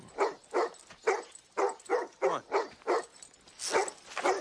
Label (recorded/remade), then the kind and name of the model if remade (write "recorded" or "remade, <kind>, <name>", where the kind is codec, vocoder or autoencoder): recorded